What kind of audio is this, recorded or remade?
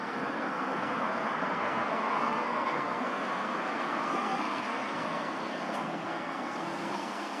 remade